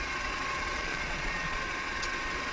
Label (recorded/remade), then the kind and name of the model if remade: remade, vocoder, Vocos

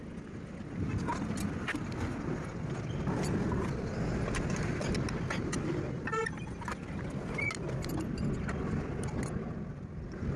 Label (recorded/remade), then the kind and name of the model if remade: recorded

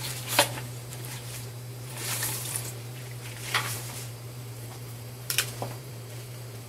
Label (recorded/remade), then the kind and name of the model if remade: remade, vocoder, BigVGAN v2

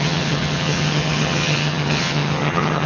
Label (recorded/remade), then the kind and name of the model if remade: remade, vocoder, HiFi-GAN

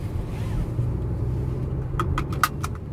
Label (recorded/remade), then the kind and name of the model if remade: recorded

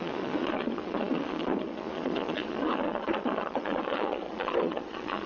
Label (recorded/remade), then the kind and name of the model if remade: remade, vocoder, Vocos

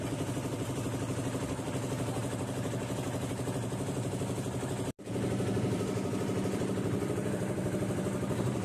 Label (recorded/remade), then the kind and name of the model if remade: remade, vocoder, BigVGAN v2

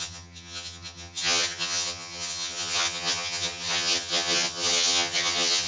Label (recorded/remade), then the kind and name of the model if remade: remade, vocoder, HiFi-GAN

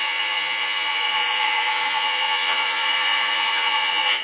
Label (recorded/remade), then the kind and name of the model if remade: remade, vocoder, Vocos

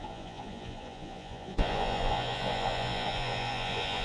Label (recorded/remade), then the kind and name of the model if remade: remade, vocoder, Vocos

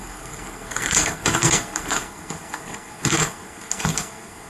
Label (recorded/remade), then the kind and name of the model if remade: remade, codec, SNAC